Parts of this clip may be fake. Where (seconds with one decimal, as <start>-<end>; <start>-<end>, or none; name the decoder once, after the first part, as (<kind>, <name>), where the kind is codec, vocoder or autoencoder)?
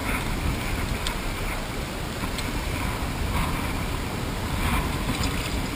none